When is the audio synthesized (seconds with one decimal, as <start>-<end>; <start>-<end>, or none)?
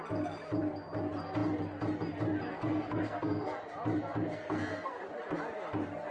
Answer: 2.5-3.5; 4.3-5.0